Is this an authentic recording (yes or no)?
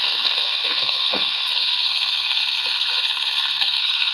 no